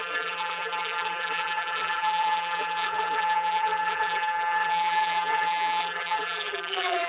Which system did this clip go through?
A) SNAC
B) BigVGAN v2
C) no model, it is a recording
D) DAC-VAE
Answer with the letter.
B